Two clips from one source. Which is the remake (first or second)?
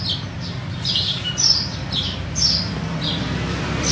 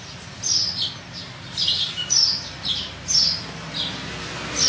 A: first